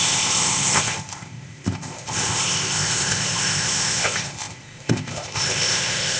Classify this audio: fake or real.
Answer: fake